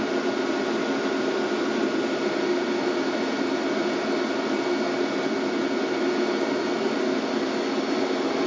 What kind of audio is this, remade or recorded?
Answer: recorded